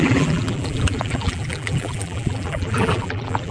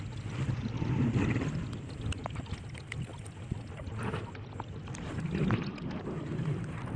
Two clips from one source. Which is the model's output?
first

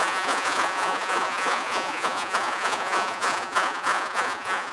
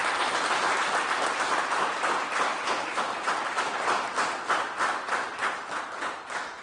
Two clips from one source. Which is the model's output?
first